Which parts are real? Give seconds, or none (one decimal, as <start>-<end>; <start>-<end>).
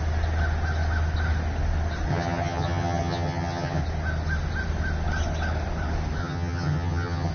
0.0-2.1; 3.8-6.2